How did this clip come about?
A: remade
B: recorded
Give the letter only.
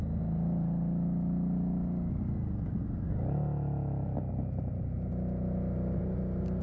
B